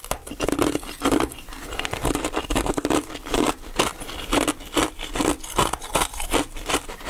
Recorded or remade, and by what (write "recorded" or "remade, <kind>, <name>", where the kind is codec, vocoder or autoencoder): recorded